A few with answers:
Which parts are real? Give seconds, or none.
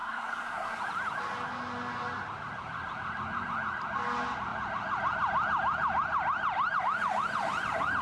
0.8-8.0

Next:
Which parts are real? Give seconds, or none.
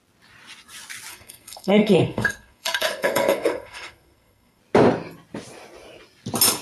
0.0-1.1; 4.6-6.6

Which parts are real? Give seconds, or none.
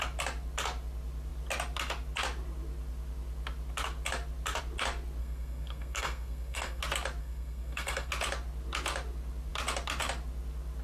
0.0-5.2; 6.8-7.2; 8.1-10.8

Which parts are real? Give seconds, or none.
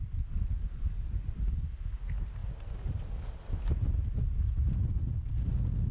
0.0-5.9